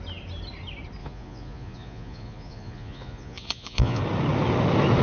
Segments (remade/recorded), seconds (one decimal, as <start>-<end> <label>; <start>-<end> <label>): 0.0-1.0 recorded; 1.0-4.0 remade; 4.0-5.0 recorded